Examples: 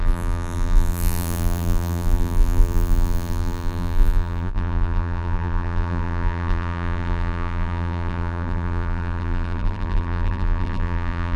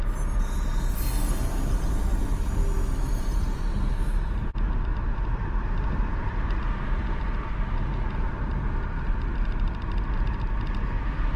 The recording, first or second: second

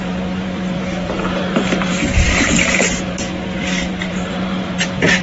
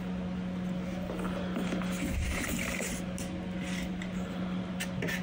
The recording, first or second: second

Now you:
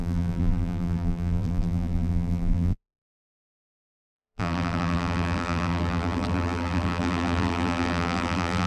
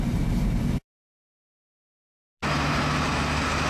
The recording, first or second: second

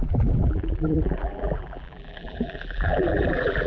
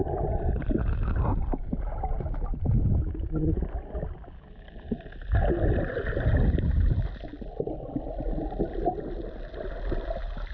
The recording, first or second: second